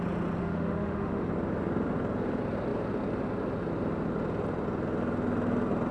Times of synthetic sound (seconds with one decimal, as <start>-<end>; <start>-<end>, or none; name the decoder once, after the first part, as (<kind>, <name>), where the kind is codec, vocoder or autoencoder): 0.4-1.2 (autoencoder, DAC-VAE)